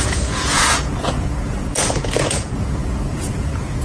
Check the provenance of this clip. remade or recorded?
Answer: remade